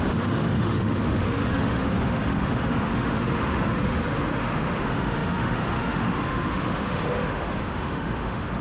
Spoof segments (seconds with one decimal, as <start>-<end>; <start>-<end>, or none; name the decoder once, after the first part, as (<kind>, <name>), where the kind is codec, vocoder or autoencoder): 0.0-8.6 (autoencoder, DAC-VAE)